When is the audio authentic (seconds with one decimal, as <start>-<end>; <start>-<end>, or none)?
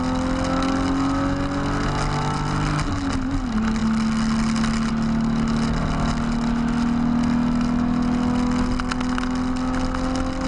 0.0-10.5